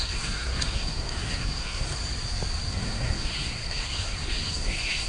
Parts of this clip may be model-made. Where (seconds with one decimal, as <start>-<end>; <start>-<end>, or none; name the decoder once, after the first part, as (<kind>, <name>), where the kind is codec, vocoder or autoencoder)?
0.0-2.0 (codec, SNAC); 2.7-5.1